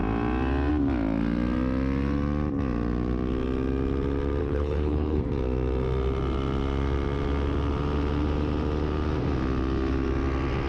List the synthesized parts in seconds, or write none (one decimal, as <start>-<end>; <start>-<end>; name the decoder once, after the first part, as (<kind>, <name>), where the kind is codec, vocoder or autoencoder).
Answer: 4.4-5.2 (codec, HILCodec)